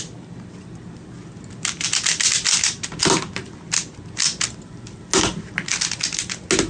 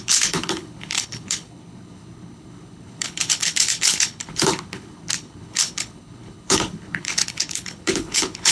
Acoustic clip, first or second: first